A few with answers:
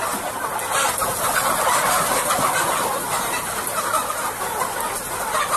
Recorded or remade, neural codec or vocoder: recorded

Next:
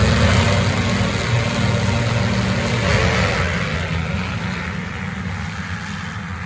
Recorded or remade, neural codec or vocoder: recorded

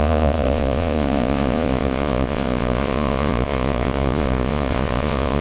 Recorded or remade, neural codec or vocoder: remade, vocoder, Vocos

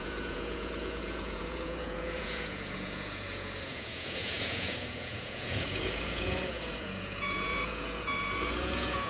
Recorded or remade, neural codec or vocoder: remade, vocoder, Vocos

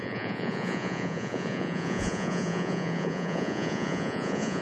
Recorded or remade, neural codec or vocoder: remade, vocoder, Vocos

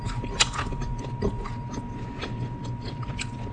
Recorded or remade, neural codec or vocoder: recorded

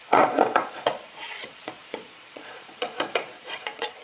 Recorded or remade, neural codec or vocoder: remade, vocoder, Vocos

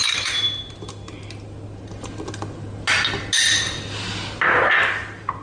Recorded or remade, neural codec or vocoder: recorded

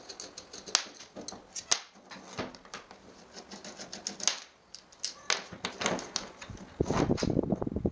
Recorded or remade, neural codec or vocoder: recorded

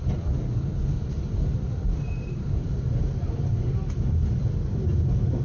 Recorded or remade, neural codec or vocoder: recorded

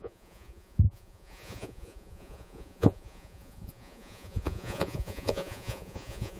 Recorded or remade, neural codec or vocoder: remade, vocoder, Vocos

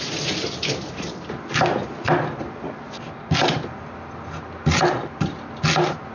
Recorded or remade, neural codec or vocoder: recorded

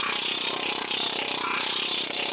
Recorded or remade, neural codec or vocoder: remade, vocoder, Vocos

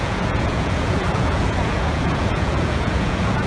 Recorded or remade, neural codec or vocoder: remade, vocoder, Vocos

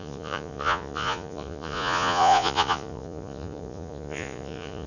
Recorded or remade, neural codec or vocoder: remade, vocoder, Vocos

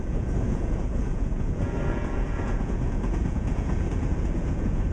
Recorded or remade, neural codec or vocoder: remade, vocoder, Vocos